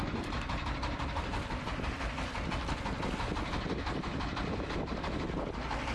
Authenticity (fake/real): real